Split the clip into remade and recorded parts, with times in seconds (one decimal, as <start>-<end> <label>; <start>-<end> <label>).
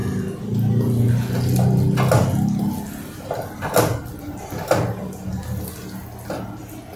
0.0-7.0 recorded